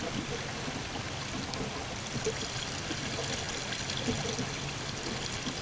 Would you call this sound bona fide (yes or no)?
yes